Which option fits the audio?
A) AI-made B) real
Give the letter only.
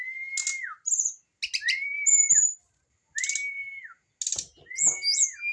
B